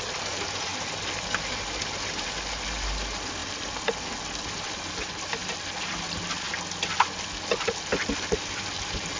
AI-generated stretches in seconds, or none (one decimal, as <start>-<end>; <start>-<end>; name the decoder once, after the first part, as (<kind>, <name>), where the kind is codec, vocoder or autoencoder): none